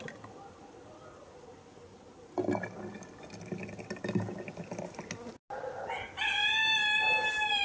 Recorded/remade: recorded